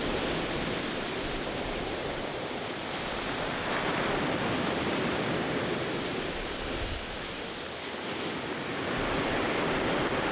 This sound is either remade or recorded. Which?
remade